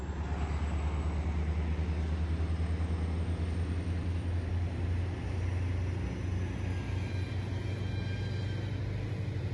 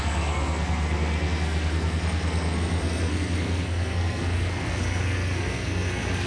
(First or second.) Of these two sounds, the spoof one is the second